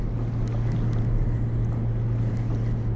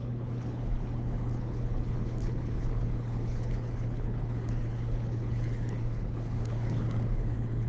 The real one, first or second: first